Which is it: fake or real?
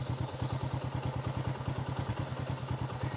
real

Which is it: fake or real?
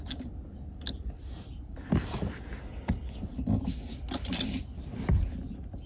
real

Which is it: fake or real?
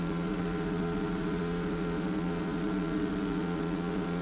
fake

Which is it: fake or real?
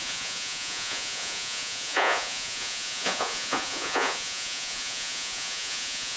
fake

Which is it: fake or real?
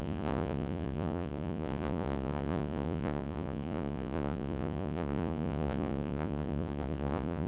fake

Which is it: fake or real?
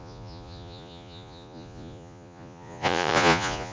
fake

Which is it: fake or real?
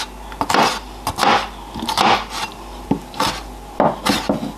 real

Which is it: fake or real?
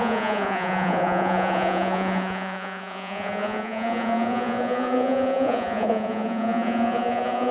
fake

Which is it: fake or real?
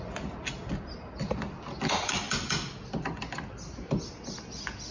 real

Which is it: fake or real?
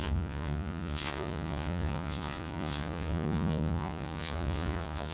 fake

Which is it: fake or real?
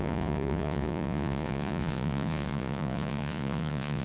fake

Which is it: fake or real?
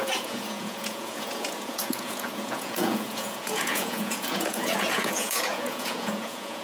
fake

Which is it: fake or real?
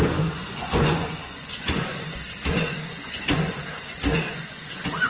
fake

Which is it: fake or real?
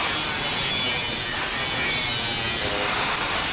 real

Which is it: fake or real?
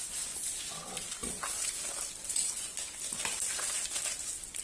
real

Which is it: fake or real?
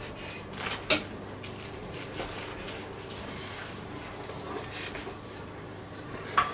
real